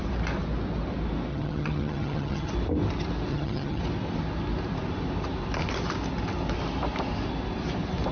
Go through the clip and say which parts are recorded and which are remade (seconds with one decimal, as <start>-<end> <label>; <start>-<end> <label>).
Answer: 0.0-1.3 recorded; 1.3-2.5 remade; 2.5-3.3 recorded; 3.3-3.8 remade; 3.8-8.1 recorded